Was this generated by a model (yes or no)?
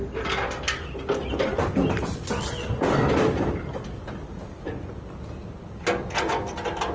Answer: no